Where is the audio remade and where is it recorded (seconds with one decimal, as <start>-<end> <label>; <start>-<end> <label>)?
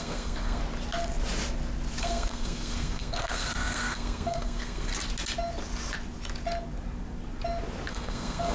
0.0-0.6 remade; 0.6-2.0 recorded; 2.0-4.9 remade; 4.9-7.9 recorded; 7.9-8.5 remade